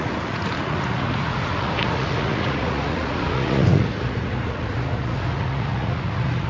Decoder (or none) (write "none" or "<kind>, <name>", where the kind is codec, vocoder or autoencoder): vocoder, Vocos